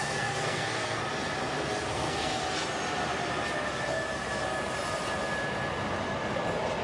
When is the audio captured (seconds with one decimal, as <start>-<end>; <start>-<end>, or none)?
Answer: 1.0-1.9; 2.4-6.8